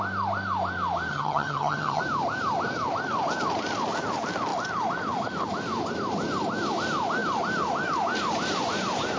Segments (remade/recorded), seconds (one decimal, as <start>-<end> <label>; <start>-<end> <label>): 0.0-1.1 recorded; 1.1-2.0 remade; 2.0-9.2 recorded